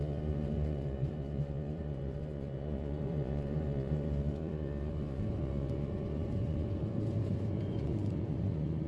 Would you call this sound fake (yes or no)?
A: yes